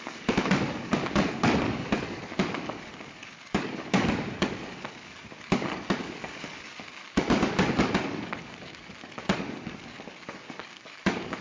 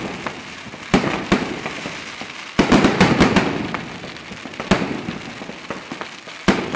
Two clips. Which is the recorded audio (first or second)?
second